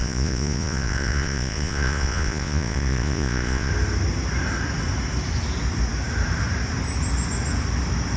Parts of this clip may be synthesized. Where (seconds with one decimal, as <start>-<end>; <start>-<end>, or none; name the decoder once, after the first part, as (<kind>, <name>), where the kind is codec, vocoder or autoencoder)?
0.0-3.7 (vocoder, Vocos)